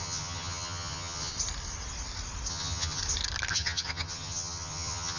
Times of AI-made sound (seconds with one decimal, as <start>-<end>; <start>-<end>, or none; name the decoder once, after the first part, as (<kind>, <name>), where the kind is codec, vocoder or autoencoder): 0.0-1.3 (vocoder, HiFi-GAN); 2.5-3.0; 3.5-5.2